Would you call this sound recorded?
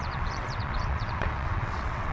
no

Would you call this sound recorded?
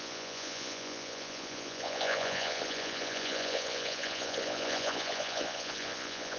no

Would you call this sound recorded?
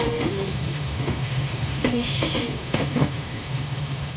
no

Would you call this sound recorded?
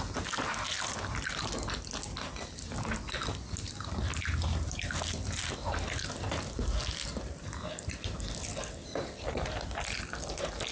yes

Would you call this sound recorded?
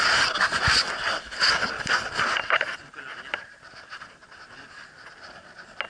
yes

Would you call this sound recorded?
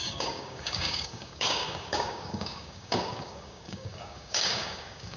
no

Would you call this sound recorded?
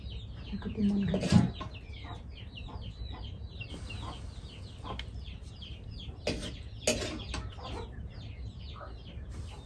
yes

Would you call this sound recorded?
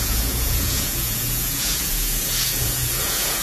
no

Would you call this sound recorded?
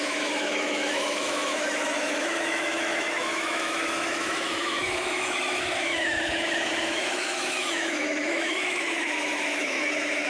no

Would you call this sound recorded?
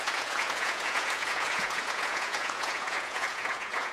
no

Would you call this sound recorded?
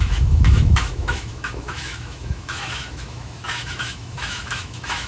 no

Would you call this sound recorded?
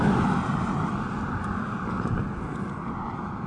yes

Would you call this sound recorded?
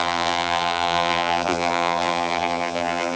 no